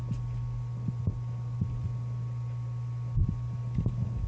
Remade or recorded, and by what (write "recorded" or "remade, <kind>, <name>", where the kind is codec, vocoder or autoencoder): recorded